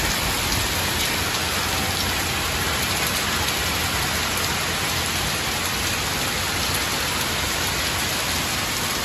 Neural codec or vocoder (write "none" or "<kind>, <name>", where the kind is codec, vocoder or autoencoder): none